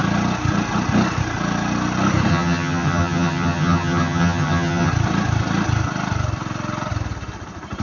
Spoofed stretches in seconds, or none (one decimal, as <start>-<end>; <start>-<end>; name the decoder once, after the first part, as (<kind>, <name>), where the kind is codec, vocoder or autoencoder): 2.3-4.9 (vocoder, HiFi-GAN)